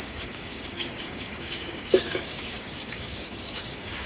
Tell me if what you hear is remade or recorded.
remade